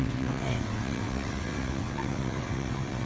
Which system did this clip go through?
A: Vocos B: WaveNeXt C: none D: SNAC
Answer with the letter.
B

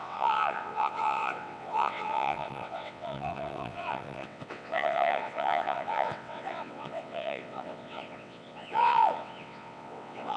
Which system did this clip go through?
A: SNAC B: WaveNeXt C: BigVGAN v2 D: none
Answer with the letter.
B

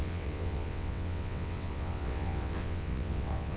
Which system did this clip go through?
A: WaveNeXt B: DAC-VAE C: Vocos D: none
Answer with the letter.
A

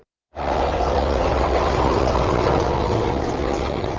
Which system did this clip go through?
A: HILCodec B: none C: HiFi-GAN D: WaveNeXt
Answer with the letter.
D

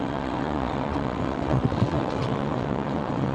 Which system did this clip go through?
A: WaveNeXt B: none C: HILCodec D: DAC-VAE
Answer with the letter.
A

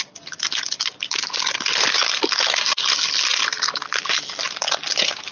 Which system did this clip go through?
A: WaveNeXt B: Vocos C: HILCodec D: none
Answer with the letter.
D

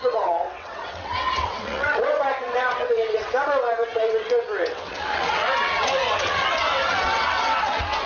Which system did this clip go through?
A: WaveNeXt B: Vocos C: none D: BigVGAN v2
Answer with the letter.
A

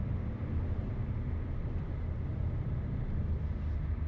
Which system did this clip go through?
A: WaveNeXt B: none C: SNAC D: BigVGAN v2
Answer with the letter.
B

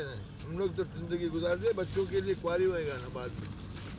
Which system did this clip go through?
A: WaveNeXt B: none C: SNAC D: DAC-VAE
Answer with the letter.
B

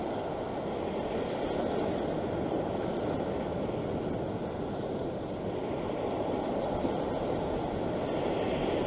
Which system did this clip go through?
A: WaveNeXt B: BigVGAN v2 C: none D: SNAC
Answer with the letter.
C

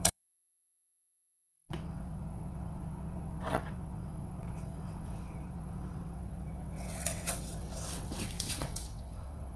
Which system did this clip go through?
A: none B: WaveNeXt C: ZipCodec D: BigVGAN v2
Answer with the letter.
B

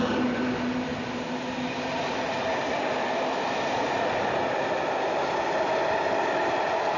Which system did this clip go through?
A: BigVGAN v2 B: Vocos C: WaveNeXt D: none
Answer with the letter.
D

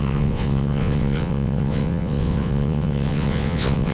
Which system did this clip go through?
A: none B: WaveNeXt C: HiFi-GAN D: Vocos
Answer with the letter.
B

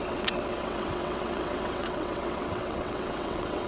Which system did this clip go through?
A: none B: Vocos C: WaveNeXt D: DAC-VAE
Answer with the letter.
C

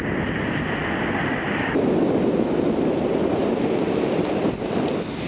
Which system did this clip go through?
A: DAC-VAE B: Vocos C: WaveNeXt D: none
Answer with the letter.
D